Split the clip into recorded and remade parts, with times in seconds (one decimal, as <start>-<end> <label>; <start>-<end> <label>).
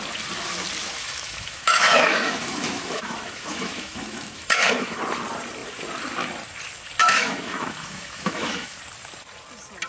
0.0-0.8 recorded; 0.8-5.0 remade; 5.0-7.0 recorded; 7.0-8.8 remade; 8.8-9.9 recorded